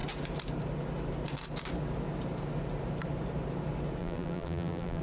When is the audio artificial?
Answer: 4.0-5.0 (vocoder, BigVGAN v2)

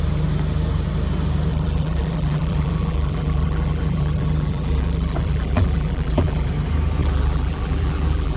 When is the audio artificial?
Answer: 1.5-6.5 (vocoder, BigVGAN v2); 7.0-8.4

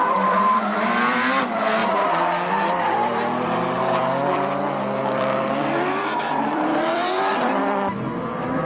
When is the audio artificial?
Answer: 0.0-1.8 (vocoder, BigVGAN v2); 2.5-8.7

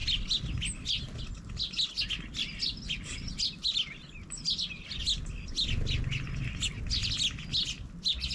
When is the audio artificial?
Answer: none

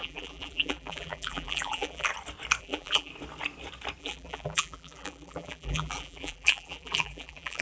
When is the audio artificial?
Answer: 0.0-2.1 (vocoder, BigVGAN v2); 2.6-3.1; 4.0-7.6

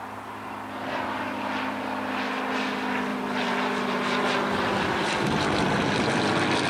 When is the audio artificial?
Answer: 3.1-5.4 (vocoder, BigVGAN v2)

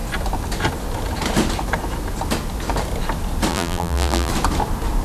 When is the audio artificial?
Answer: 3.5-4.3 (vocoder, BigVGAN v2)

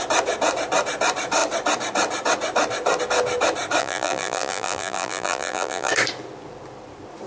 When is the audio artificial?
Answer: 3.8-5.9 (vocoder, BigVGAN v2)